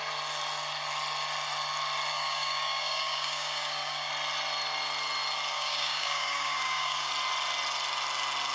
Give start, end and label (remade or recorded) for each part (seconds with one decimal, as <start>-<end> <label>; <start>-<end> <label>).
0.0-2.1 recorded; 2.1-4.1 remade; 4.1-5.5 recorded; 5.5-7.1 remade; 7.1-8.5 recorded